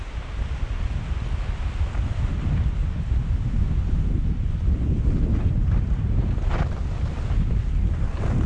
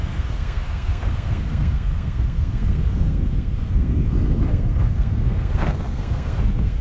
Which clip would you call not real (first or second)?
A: second